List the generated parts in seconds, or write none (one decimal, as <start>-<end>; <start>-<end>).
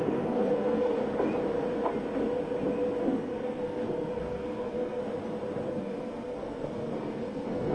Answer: 0.0-1.0; 3.0-5.0; 5.7-7.7